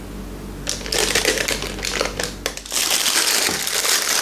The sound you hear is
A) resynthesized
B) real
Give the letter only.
B